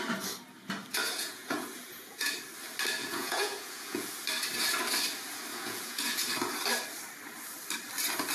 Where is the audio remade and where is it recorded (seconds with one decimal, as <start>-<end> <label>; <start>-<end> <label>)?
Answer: 0.0-1.0 recorded; 1.0-2.3 remade; 2.3-3.0 recorded; 3.0-4.1 remade; 4.1-5.5 recorded; 5.5-6.3 remade; 6.3-8.3 recorded